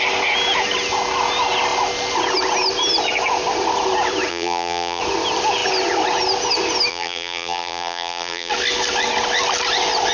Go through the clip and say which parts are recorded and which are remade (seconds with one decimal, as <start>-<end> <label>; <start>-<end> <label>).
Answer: 0.0-4.3 recorded; 4.3-5.0 remade; 5.0-6.9 recorded; 6.9-8.5 remade; 8.5-10.1 recorded

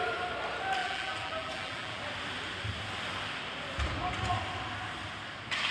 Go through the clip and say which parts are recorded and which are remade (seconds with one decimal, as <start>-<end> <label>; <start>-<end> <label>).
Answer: 0.0-0.8 recorded; 0.8-2.0 remade; 2.0-5.7 recorded

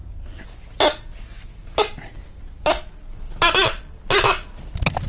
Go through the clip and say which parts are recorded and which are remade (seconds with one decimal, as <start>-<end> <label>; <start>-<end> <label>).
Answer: 0.0-0.5 remade; 0.5-5.1 recorded

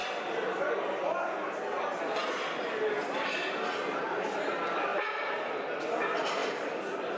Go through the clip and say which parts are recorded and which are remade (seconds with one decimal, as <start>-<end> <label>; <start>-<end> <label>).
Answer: 0.0-4.9 recorded; 4.9-5.8 remade; 5.8-6.4 recorded; 6.4-7.2 remade

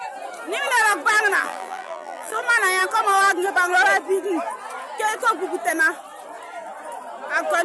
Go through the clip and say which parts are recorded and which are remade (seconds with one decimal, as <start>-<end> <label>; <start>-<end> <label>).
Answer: 0.0-1.4 recorded; 1.4-2.4 remade; 2.4-7.6 recorded

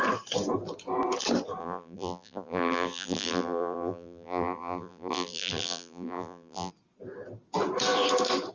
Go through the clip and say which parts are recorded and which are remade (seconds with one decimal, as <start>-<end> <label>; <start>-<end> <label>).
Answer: 0.0-1.6 recorded; 1.6-6.7 remade; 6.7-8.5 recorded

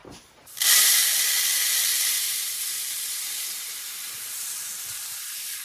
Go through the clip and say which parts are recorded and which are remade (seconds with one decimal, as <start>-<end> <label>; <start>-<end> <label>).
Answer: 0.0-0.9 remade; 0.9-1.9 recorded; 1.9-4.1 remade; 4.1-5.6 recorded